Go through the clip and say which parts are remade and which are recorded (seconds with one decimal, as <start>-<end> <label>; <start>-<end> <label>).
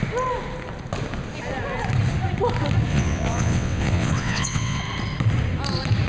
0.0-2.9 recorded; 2.9-4.8 remade; 4.8-6.1 recorded